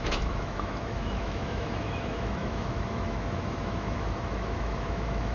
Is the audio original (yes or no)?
no